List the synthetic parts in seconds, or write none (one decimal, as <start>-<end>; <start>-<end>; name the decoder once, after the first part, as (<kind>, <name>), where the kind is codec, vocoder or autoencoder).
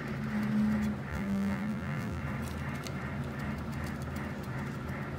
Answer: 1.1-2.2 (vocoder, BigVGAN v2)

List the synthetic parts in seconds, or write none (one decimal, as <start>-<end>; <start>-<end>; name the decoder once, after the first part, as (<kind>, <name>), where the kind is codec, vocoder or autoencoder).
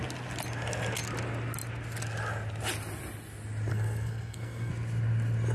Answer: 3.7-4.7 (codec, SNAC)